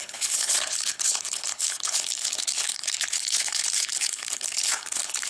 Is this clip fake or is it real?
fake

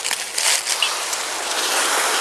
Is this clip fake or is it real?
real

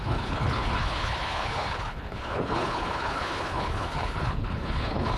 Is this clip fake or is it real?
fake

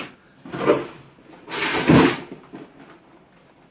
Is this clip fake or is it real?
real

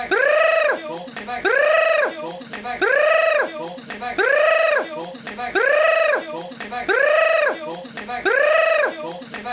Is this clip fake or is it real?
real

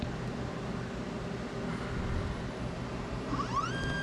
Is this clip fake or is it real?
real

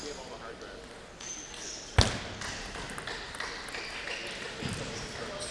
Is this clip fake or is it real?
real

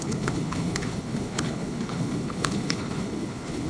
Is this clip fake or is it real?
fake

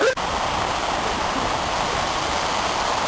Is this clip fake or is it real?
real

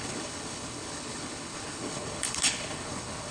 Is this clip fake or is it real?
fake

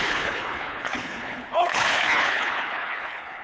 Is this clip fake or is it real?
fake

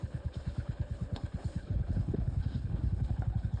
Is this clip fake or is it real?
fake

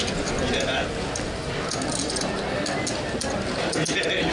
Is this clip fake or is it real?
real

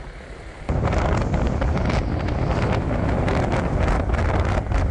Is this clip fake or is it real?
real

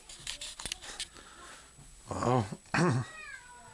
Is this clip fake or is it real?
real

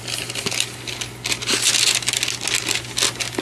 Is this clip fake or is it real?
real